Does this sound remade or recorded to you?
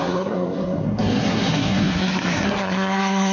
remade